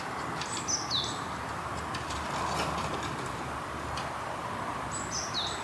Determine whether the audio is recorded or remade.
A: remade